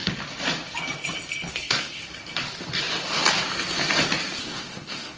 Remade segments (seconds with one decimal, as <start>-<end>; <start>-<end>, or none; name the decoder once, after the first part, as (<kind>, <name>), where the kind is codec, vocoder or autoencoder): 1.5-2.0 (codec, SNAC); 4.4-5.2